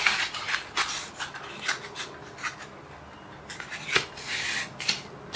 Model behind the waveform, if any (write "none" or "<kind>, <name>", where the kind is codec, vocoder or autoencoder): none